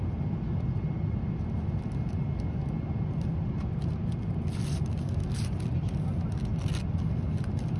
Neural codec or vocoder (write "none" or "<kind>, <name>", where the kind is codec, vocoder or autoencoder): none